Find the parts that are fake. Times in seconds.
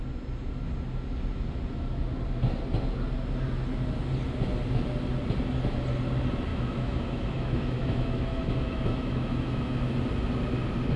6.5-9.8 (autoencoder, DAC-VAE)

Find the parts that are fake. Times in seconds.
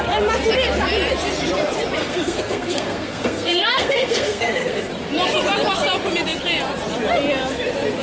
2.0-4.9 (codec, SNAC)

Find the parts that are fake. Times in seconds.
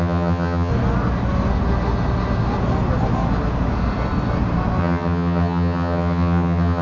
0.0-0.7 (vocoder, HiFi-GAN); 4.8-6.8